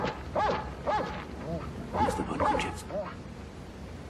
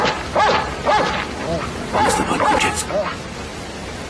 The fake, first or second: second